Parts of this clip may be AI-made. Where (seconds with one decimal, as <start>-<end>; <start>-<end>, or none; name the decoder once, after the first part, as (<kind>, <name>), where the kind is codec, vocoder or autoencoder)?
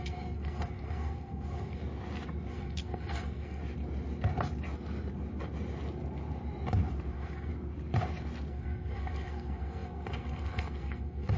0.0-1.8 (codec, SNAC); 2.5-3.6; 7.1-7.5; 8.5-11.4